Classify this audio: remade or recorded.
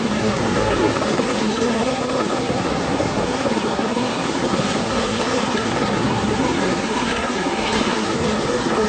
remade